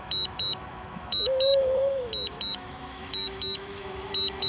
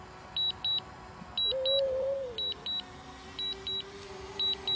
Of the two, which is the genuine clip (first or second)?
second